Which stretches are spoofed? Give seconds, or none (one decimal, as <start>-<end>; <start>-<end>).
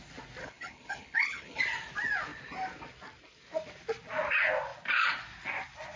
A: 0.4-1.6